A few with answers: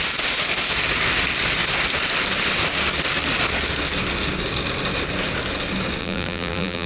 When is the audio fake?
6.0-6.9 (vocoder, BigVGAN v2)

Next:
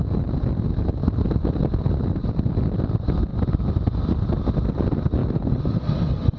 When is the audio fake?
5.2-6.4 (vocoder, BigVGAN v2)